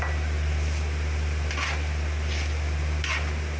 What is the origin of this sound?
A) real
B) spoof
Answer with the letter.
A